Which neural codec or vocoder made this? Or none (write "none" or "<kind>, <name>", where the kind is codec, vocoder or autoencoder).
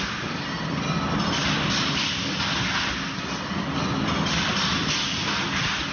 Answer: none